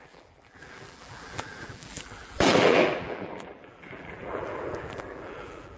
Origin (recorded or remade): remade